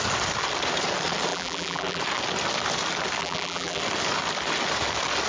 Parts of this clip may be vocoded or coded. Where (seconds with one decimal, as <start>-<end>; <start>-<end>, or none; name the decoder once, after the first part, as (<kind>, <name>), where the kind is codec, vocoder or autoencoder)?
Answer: 1.3-2.0 (vocoder, BigVGAN v2); 3.2-3.8